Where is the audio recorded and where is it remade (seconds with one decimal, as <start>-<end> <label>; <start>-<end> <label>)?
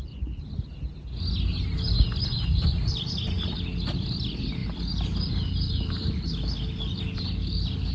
0.0-7.9 recorded